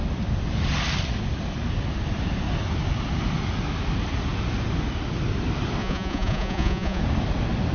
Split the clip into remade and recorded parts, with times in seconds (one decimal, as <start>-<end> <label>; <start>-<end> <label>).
0.0-5.8 recorded; 5.8-7.0 remade; 7.0-7.7 recorded